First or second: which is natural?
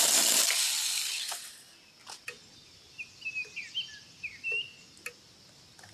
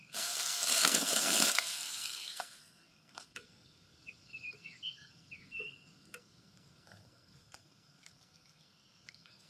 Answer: first